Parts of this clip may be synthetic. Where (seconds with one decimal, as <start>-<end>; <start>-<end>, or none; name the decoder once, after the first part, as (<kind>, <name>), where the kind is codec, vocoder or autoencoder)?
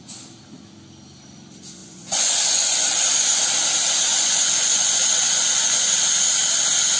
1.8-3.4 (vocoder, Vocos); 4.1-6.0